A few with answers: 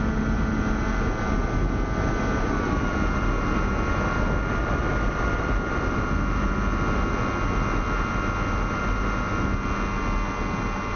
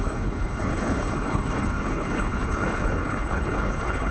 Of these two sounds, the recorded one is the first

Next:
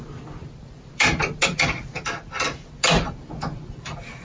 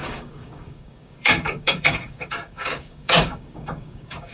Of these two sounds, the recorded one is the first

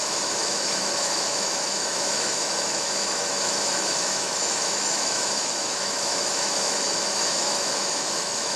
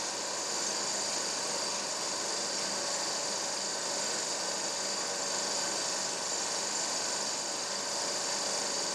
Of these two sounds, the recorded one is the second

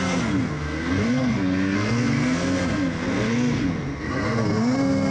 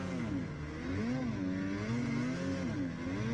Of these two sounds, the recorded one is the second